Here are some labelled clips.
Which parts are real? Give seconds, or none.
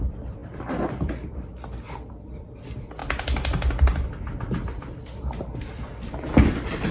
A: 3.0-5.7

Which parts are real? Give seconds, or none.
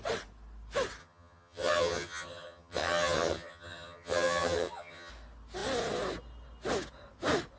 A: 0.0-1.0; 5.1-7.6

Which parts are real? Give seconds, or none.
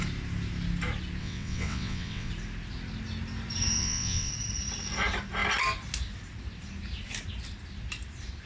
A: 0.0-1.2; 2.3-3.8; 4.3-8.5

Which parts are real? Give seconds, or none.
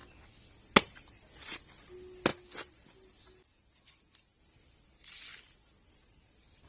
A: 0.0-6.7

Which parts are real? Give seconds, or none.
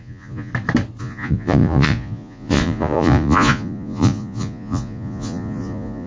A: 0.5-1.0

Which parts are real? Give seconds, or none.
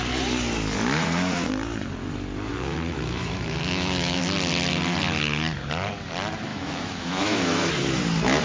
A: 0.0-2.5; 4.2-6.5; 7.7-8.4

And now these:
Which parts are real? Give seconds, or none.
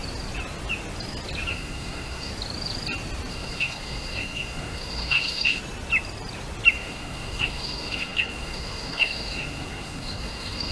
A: 0.0-1.5; 2.3-3.3; 5.6-6.7